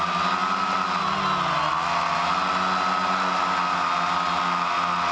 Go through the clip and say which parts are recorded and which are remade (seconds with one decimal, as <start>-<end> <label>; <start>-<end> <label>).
0.0-5.1 recorded